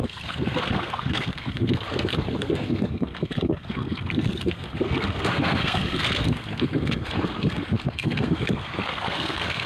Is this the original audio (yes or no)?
no